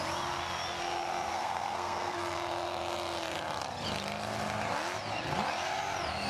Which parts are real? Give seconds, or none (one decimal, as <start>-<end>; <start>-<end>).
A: 0.0-1.3; 2.2-6.3

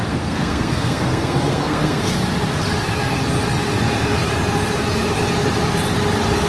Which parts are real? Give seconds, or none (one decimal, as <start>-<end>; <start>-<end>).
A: 2.1-6.5

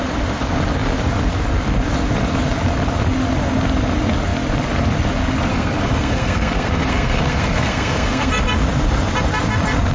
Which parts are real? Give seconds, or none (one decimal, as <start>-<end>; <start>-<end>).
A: 0.0-5.5; 8.3-9.9

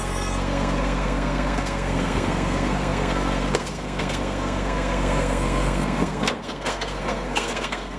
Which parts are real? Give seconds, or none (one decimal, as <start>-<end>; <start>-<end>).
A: none

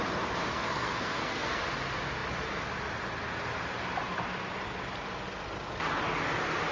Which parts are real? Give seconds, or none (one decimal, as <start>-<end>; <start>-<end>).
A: 0.0-0.5; 1.6-6.7

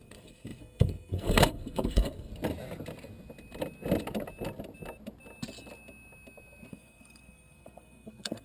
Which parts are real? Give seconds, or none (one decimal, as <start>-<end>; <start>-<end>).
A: 2.3-6.7

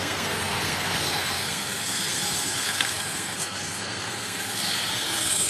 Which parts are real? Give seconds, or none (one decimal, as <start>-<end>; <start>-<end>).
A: none